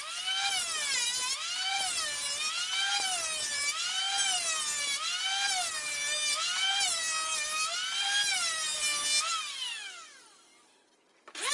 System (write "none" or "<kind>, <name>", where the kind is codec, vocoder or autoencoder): none